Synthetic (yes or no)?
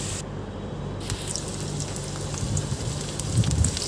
no